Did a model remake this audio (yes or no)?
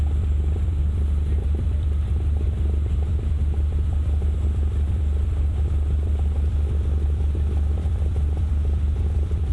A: yes